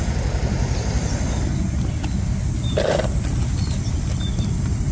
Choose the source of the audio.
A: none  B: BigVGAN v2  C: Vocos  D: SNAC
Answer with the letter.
B